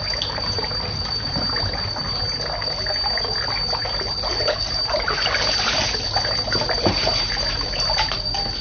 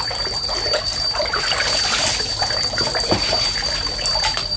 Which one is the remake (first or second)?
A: second